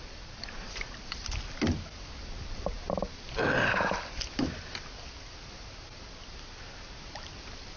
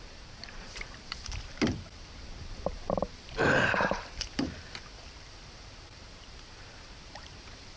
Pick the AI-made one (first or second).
second